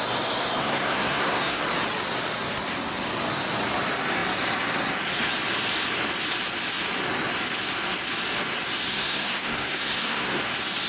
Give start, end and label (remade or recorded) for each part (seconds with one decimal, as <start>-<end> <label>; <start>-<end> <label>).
0.0-0.6 recorded; 0.6-1.6 remade; 1.6-8.9 recorded; 8.9-10.4 remade; 10.4-10.9 recorded